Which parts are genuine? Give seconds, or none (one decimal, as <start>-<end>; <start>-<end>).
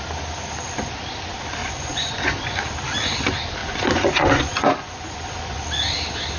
0.0-1.6; 2.6-3.6; 5.6-6.4